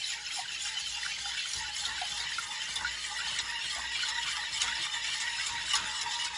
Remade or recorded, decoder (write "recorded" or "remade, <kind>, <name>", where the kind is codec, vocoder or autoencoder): recorded